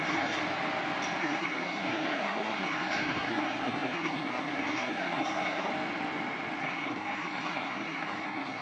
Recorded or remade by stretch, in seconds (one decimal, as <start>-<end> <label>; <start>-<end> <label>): 0.0-0.4 remade; 0.4-1.2 recorded; 1.2-5.7 remade; 5.7-6.6 recorded; 6.6-8.6 remade